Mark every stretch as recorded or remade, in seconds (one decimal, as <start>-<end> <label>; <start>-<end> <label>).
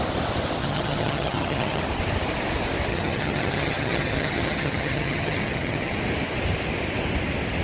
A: 0.0-0.6 recorded; 0.6-1.8 remade; 1.8-2.9 recorded; 2.9-6.0 remade; 6.0-7.6 recorded